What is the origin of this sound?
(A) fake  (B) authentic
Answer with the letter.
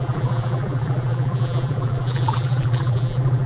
A